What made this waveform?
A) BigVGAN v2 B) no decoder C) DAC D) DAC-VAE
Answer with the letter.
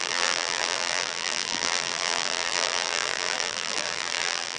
A